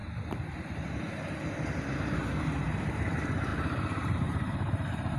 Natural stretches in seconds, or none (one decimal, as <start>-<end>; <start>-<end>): 3.1-3.5

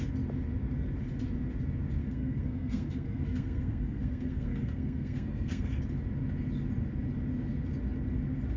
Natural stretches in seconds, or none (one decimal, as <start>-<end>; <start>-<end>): 0.0-2.0; 5.8-8.6